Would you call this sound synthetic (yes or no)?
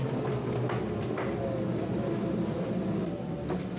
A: no